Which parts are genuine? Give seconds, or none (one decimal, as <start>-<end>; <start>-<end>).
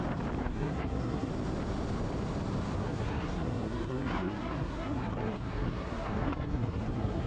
0.0-0.4; 1.3-2.8